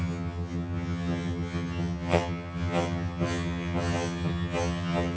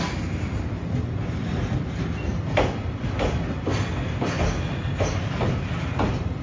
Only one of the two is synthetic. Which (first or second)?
first